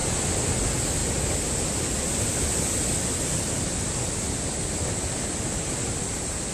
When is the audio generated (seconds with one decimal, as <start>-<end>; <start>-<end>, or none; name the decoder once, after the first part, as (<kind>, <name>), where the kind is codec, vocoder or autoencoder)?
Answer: none